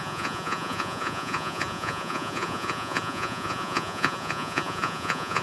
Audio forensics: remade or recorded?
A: remade